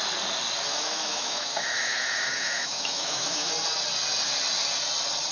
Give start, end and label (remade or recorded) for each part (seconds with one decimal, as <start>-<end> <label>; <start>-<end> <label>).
0.0-0.7 recorded; 0.7-3.5 remade; 3.5-5.3 recorded